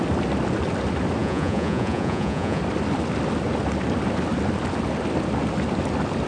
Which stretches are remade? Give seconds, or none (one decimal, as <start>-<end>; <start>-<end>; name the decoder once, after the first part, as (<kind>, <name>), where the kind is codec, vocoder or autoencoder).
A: 1.2-2.6 (vocoder, Vocos)